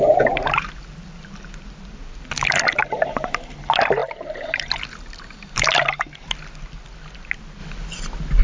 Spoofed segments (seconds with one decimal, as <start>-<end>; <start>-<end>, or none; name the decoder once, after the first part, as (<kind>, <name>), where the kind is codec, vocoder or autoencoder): none